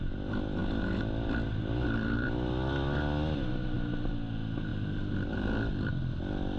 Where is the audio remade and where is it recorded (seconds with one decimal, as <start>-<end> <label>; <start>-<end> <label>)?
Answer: 0.0-6.6 recorded